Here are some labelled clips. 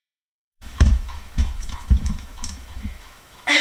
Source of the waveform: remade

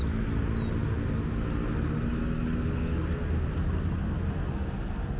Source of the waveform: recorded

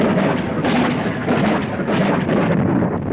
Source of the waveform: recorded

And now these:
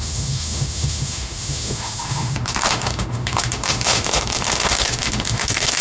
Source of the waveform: remade